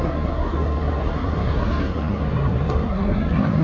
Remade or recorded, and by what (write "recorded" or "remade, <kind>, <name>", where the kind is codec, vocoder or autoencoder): remade, codec, SNAC